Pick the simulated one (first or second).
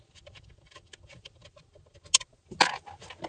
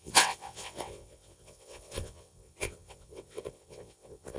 second